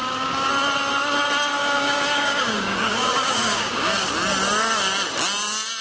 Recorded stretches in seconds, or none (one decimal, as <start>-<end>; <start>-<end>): 0.5-1.6; 4.1-5.8